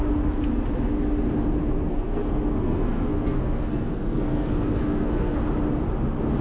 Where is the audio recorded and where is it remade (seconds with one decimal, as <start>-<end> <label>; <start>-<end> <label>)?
0.0-1.9 recorded; 1.9-5.4 remade; 5.4-6.4 recorded